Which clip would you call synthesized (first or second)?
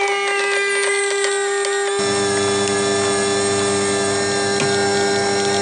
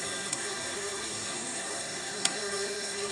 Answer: second